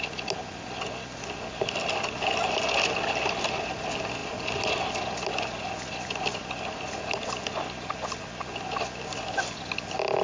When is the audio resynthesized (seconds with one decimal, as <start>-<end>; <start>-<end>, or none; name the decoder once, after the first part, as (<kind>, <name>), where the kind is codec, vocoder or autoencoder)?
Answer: none